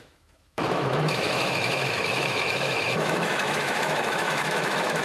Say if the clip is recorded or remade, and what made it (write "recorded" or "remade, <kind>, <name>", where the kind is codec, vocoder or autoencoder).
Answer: remade, autoencoder, DAC-VAE